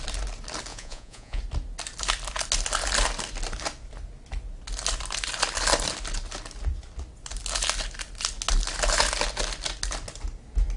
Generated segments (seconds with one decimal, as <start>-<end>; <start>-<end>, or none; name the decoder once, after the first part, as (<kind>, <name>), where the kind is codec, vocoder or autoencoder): 0.7-1.4 (vocoder, Vocos)